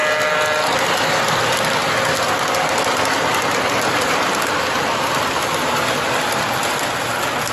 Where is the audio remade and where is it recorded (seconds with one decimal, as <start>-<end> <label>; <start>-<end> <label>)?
0.0-7.5 recorded